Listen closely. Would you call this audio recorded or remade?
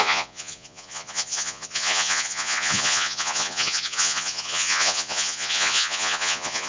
remade